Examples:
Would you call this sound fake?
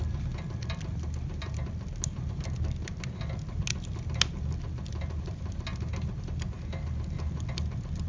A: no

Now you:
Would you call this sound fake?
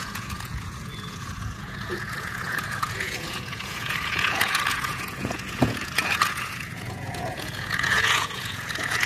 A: yes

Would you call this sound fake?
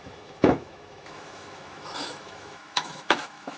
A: yes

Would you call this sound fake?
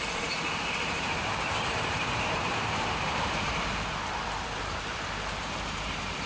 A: yes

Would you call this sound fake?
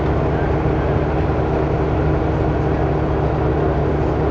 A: no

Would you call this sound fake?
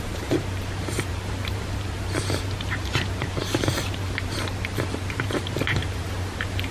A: yes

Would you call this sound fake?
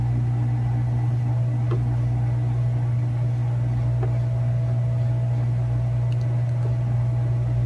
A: no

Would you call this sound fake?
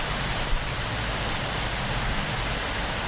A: no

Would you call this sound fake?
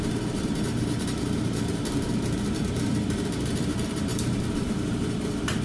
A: yes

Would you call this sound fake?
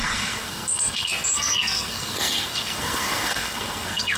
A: yes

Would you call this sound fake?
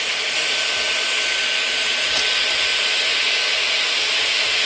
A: no